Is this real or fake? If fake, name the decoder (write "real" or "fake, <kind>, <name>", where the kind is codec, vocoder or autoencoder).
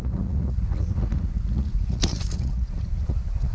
fake, vocoder, Vocos